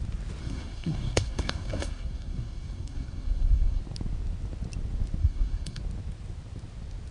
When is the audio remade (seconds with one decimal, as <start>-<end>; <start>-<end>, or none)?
0.4-3.8; 5.2-5.8